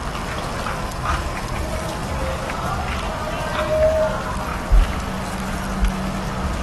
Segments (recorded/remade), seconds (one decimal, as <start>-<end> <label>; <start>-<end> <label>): 0.0-6.6 recorded